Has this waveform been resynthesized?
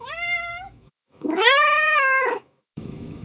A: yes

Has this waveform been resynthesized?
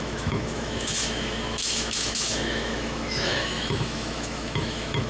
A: yes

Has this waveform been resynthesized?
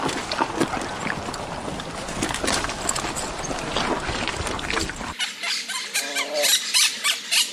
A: no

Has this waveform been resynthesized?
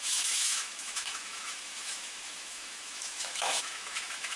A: yes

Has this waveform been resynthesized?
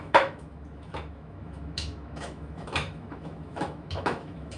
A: yes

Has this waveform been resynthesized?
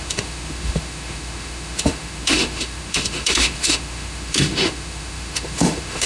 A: yes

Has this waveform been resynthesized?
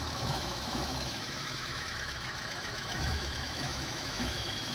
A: yes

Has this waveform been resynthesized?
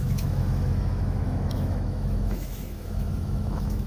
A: yes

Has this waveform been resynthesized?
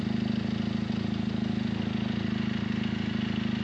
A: no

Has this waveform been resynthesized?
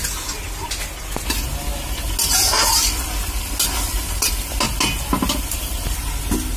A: no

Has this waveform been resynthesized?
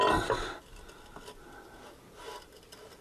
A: no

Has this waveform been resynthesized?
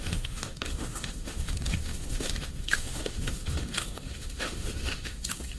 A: yes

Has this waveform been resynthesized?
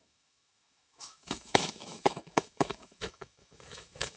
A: yes